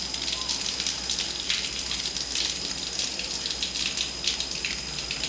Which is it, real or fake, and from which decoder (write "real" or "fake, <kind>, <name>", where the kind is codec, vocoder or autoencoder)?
real